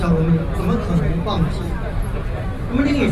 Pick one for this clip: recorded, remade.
recorded